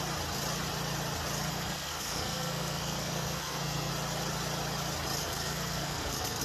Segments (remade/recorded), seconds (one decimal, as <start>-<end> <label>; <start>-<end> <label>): 0.0-1.5 recorded; 1.5-3.9 remade; 3.9-5.2 recorded; 5.2-6.4 remade